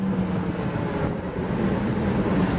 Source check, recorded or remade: recorded